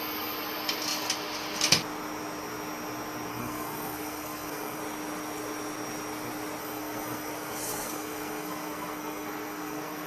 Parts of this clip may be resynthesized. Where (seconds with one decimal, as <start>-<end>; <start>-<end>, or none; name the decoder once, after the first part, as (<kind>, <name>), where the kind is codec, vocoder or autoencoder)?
3.3-4.8 (codec, SNAC); 6.6-10.1